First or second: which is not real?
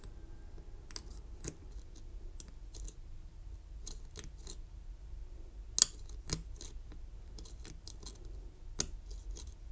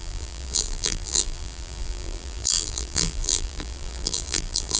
second